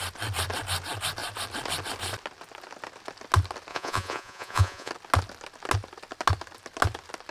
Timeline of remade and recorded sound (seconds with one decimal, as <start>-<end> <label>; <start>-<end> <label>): 0.0-3.7 recorded; 3.7-4.9 remade; 4.9-7.3 recorded